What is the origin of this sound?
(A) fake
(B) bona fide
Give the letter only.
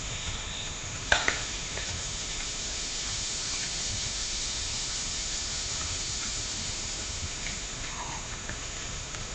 A